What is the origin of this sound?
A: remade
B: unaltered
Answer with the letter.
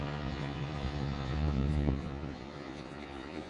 A